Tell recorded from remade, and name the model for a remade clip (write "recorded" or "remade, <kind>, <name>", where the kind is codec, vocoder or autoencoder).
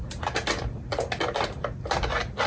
recorded